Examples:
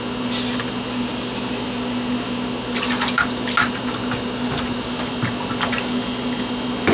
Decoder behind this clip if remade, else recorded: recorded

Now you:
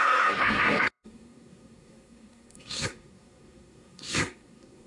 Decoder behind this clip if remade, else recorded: remade, codec, SNAC